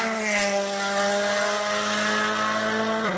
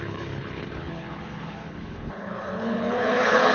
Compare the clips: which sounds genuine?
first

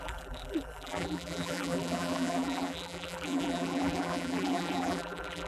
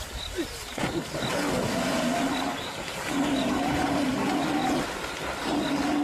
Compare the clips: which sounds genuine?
second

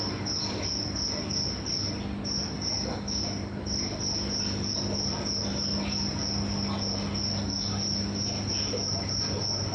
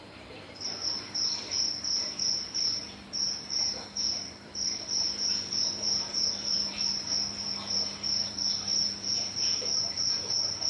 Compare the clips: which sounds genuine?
first